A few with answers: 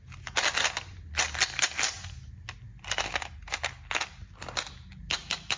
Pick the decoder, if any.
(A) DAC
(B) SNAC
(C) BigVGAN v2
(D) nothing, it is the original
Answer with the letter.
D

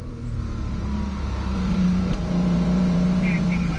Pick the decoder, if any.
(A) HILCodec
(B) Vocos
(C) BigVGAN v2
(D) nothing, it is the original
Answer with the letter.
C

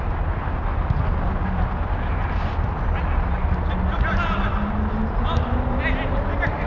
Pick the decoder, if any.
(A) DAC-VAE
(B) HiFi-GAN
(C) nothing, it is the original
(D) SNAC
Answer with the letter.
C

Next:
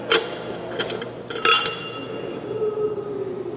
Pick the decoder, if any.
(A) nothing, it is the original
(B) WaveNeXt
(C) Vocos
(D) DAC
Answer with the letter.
A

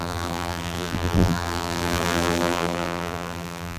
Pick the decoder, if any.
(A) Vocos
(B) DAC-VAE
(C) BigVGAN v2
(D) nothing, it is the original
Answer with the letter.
C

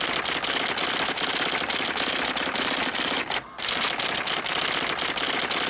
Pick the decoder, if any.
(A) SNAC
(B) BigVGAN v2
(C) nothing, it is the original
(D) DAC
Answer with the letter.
C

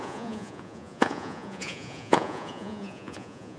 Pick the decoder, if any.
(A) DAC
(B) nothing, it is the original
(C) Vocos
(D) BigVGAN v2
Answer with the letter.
C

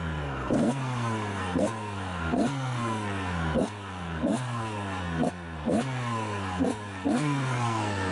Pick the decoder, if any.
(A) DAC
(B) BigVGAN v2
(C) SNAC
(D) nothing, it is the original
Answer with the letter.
C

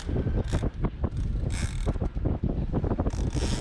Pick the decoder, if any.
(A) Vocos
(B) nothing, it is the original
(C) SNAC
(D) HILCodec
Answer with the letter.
B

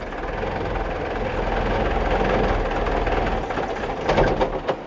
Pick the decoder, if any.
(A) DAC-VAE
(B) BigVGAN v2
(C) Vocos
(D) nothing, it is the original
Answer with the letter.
D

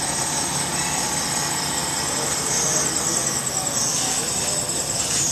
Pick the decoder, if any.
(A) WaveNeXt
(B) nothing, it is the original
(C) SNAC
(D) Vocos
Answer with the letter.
B